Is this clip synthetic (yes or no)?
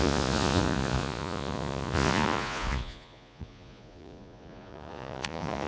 yes